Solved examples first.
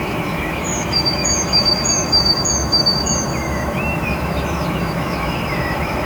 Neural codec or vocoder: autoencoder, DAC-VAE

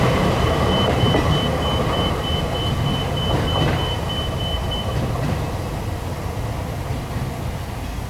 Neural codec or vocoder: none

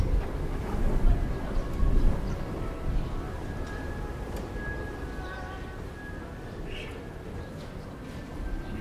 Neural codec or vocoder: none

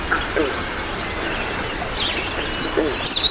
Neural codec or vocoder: none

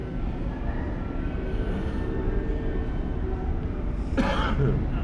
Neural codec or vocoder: none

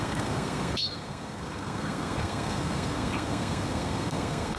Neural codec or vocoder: codec, SNAC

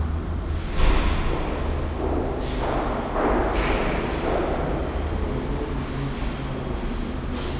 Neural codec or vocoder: none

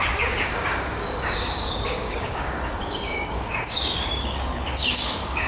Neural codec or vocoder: codec, DAC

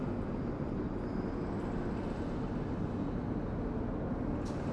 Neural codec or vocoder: none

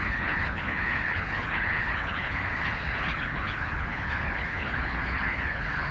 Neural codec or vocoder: codec, HILCodec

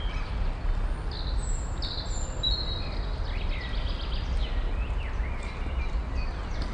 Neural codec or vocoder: none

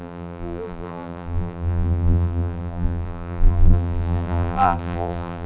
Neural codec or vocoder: vocoder, BigVGAN v2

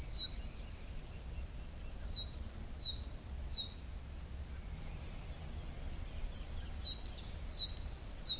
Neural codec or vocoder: none